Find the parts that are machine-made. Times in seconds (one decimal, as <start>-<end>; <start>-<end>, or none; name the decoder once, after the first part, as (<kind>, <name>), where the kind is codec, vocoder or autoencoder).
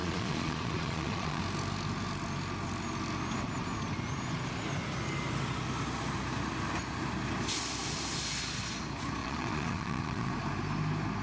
0.0-1.4 (vocoder, Vocos); 9.2-10.3